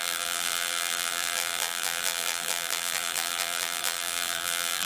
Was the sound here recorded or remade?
remade